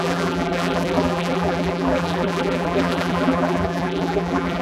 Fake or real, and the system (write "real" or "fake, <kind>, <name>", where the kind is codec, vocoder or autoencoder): fake, vocoder, BigVGAN v2